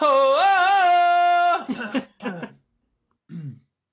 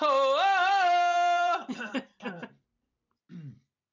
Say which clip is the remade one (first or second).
second